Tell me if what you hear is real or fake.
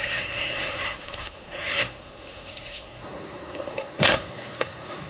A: fake